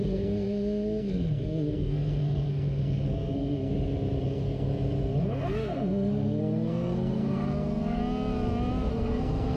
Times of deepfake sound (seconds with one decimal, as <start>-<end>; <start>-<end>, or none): 0.0-3.7; 4.2-4.7; 5.2-8.0; 8.9-9.6